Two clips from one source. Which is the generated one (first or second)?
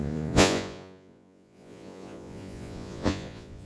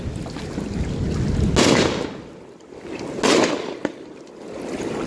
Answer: first